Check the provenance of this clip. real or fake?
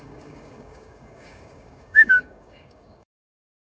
fake